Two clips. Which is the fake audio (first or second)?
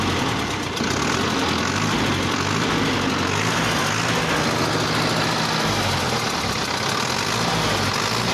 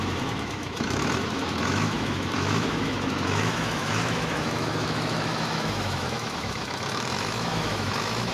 second